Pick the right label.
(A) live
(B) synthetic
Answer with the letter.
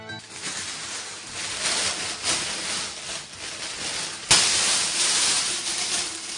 A